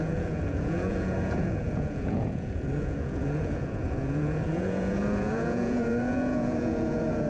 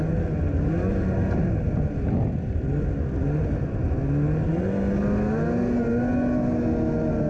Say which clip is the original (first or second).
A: second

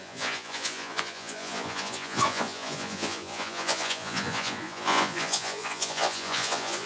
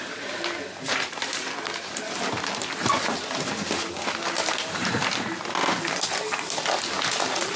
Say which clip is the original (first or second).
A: second